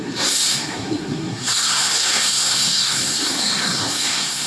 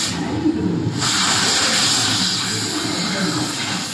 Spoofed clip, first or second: first